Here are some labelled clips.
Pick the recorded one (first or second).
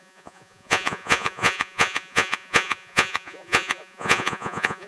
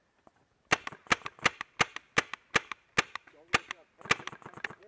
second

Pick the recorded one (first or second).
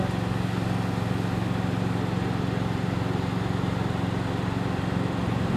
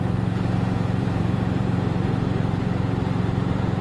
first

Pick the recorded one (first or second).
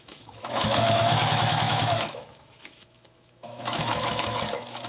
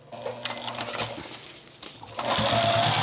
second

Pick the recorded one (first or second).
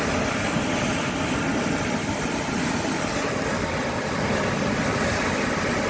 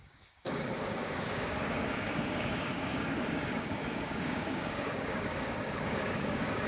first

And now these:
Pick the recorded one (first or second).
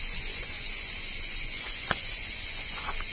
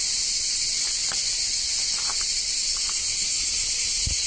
second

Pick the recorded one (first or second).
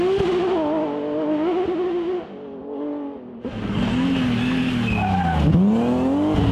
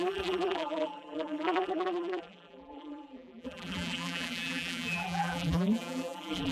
first